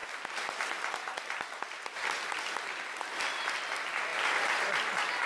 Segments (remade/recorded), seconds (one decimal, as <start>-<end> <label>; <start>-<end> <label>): 0.0-5.3 recorded